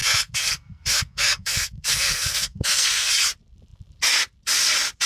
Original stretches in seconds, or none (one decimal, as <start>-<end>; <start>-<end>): 3.1-5.1

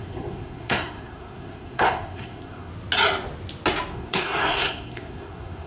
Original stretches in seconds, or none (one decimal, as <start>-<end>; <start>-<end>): 2.7-3.9